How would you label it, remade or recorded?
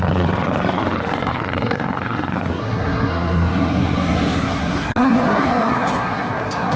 remade